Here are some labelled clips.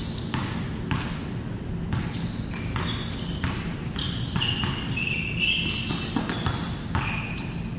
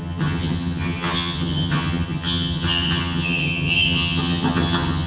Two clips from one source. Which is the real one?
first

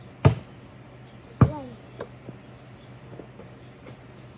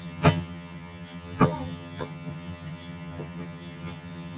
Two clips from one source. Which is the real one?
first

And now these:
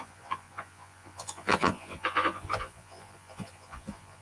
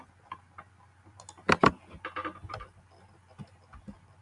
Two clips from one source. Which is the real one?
second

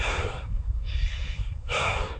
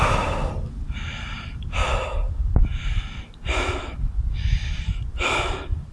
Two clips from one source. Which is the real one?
second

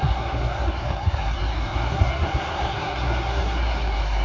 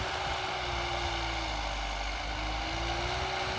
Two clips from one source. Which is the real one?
second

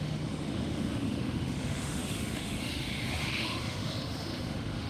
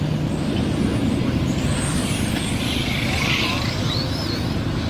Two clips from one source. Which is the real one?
second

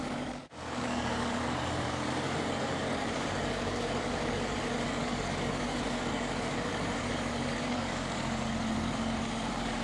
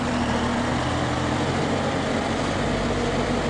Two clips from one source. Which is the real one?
second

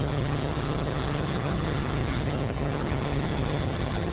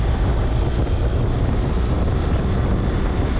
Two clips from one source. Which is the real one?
second